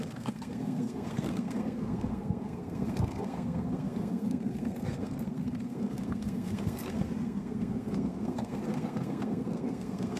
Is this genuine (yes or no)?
no